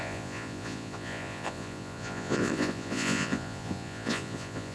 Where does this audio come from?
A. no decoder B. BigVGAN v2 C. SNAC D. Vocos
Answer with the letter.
D